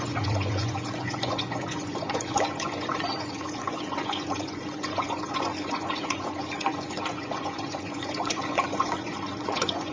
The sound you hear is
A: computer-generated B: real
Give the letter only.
A